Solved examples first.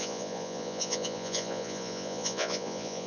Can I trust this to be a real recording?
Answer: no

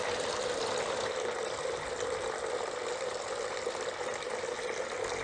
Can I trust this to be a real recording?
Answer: yes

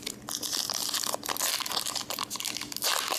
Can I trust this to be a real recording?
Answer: yes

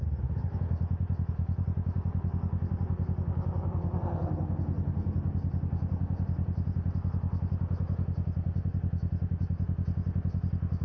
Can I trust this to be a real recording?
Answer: yes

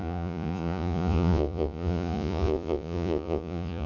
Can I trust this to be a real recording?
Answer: no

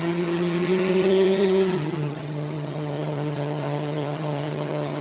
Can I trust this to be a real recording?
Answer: no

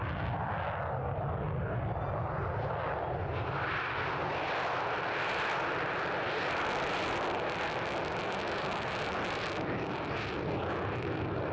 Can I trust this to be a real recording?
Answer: yes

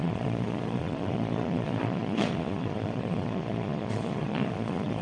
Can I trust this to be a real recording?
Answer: no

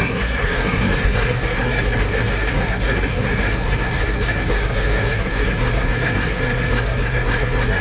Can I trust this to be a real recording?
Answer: no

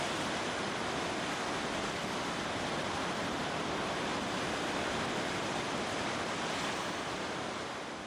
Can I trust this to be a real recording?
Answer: yes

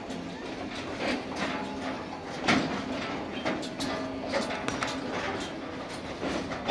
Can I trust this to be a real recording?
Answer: yes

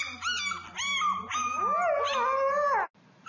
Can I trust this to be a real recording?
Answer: yes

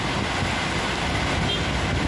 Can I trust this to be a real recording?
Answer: yes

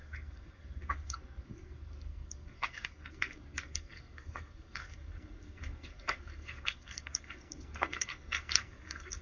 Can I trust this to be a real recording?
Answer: no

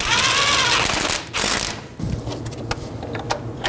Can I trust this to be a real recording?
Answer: yes